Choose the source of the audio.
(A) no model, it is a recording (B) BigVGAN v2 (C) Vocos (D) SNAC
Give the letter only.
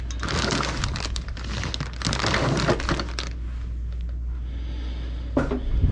A